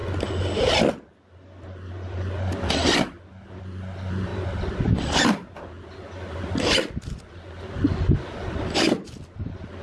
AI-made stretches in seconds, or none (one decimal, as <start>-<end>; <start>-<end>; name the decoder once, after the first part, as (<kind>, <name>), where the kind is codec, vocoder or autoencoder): none